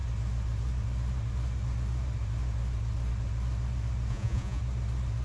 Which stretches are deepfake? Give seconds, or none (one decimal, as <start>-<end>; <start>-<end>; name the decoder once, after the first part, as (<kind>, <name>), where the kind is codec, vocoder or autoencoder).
4.1-4.6 (vocoder, Vocos)